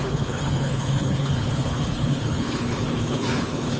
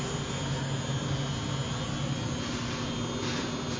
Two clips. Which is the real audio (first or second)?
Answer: second